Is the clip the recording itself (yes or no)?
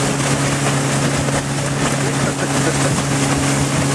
yes